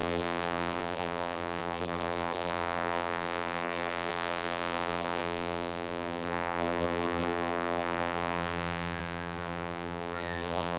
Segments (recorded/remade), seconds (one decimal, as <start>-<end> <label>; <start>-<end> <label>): 0.0-10.8 remade